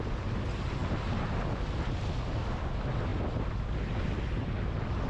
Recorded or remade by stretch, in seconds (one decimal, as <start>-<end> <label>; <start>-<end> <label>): 0.0-5.1 recorded